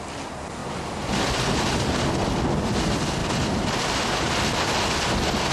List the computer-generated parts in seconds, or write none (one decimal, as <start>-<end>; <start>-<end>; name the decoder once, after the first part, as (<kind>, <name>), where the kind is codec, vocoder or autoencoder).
none